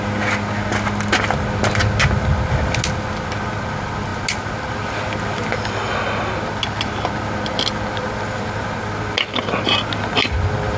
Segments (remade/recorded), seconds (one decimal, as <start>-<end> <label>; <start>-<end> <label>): 0.0-10.8 recorded